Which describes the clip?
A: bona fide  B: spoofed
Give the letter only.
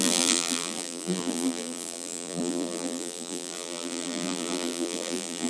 B